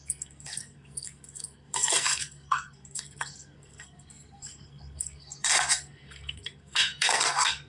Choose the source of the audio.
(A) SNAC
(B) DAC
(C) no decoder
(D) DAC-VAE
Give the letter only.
A